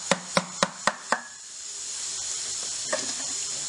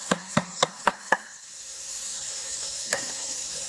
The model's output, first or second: second